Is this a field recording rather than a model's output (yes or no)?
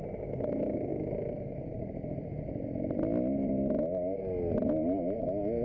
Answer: yes